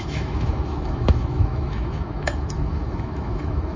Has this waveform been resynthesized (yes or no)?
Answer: yes